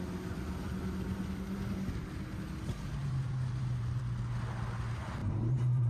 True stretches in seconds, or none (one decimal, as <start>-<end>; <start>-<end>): 0.0-3.0; 4.0-5.2